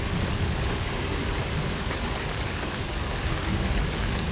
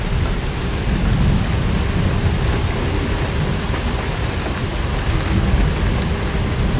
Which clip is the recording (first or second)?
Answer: second